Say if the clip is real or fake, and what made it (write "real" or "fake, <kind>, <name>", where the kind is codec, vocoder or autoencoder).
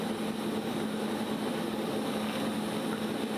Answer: real